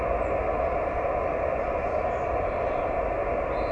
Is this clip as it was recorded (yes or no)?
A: yes